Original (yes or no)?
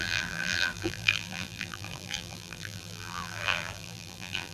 no